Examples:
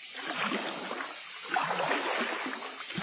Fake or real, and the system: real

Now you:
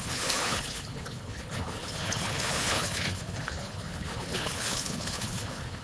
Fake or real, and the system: fake, codec, HILCodec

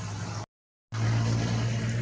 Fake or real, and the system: real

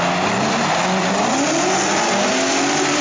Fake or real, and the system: real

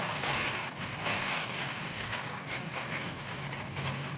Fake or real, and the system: fake, codec, DAC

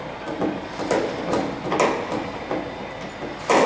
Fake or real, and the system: real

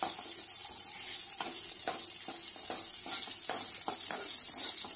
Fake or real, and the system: real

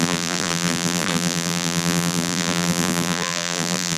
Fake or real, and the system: fake, vocoder, BigVGAN v2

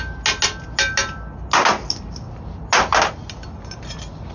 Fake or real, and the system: real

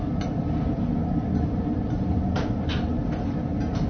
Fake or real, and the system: real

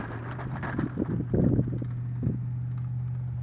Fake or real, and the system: real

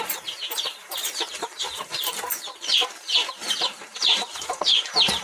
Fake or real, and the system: fake, vocoder, BigVGAN v2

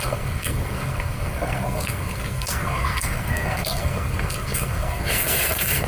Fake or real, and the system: fake, codec, SNAC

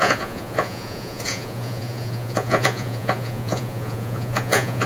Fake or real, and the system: fake, vocoder, Vocos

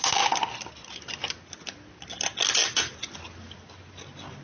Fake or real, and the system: real